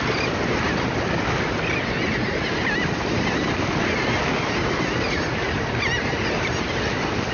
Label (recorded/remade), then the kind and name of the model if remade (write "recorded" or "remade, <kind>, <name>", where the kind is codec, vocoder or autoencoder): recorded